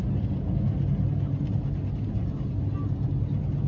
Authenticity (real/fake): real